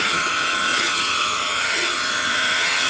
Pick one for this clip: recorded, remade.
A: remade